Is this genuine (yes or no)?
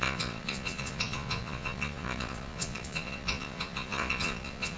no